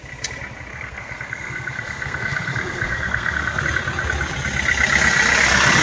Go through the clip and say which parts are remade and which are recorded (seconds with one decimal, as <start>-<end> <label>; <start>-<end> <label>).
0.0-0.7 recorded; 0.7-3.6 remade; 3.6-5.8 recorded